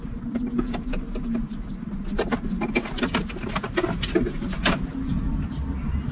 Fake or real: real